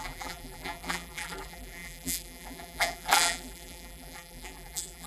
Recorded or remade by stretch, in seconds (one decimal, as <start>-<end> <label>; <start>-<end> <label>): 0.0-5.1 remade